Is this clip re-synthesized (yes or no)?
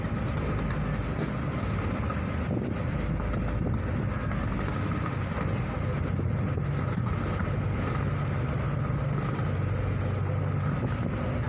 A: no